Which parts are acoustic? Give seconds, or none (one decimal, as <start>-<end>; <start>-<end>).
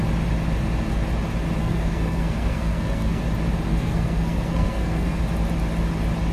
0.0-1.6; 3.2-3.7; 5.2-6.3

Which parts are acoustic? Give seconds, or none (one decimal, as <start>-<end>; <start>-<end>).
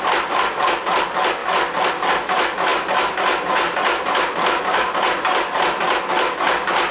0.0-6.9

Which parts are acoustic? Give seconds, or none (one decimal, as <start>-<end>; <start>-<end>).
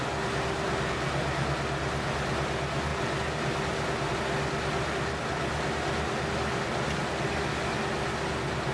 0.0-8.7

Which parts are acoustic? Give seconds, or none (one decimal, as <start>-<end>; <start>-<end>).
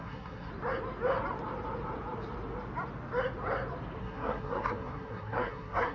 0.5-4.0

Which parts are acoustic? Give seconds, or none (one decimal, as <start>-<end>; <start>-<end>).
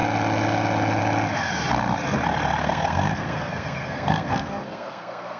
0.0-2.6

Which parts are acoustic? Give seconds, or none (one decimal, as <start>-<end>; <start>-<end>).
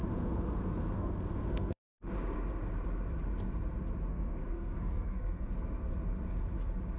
2.1-4.1; 5.5-7.0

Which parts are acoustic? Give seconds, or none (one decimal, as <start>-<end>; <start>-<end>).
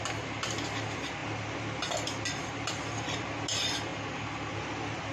0.0-5.1